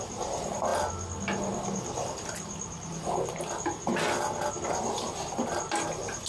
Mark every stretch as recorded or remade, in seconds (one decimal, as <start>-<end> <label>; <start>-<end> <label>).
0.0-6.3 recorded